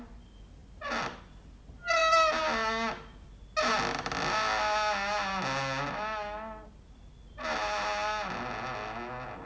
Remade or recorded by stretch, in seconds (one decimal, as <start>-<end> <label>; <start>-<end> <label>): 0.0-9.5 recorded